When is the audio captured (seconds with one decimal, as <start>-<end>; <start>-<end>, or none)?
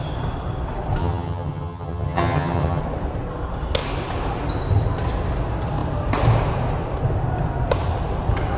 0.0-1.0; 2.8-8.6